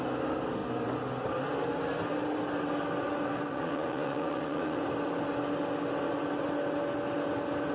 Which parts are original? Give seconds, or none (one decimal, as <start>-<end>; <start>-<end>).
0.0-3.5; 4.8-7.7